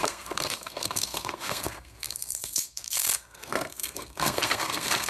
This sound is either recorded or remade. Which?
remade